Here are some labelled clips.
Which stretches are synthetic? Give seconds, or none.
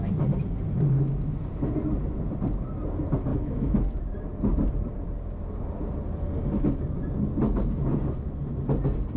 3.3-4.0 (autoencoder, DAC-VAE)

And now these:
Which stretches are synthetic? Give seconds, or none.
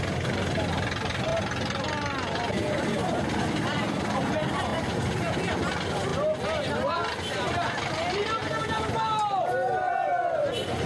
none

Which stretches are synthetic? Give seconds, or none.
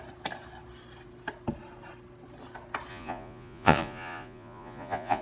2.9-5.2 (vocoder, Vocos)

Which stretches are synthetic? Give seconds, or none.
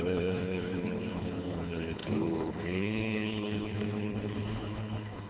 0.0-5.3 (codec, HILCodec)